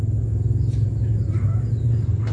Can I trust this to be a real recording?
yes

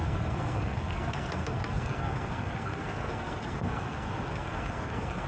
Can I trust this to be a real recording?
no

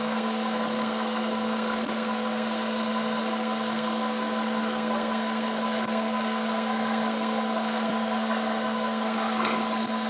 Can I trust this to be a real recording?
no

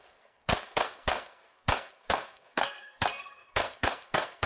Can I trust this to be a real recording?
no